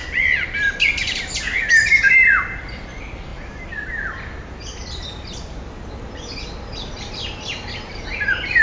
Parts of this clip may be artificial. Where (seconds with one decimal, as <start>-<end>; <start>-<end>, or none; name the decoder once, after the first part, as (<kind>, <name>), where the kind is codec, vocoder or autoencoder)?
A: none